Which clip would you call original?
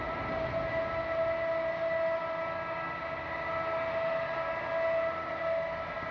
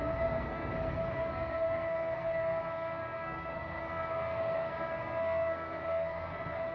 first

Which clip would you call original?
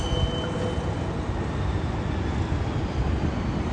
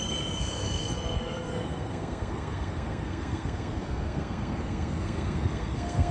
first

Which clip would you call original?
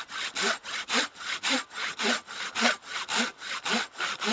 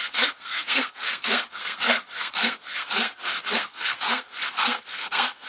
first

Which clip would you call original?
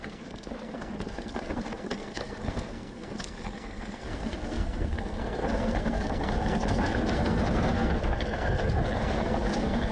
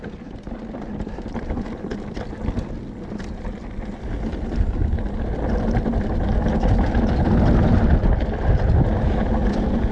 second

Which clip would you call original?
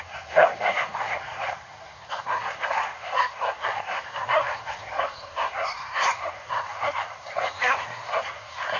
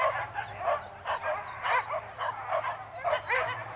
second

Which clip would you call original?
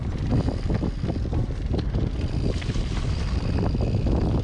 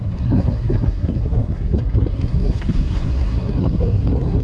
first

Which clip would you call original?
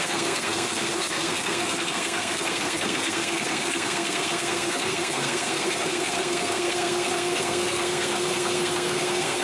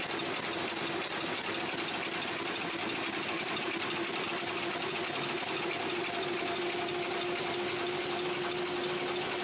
second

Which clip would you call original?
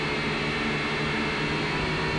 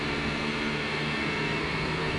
first